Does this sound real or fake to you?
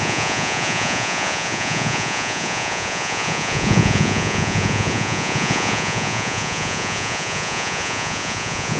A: fake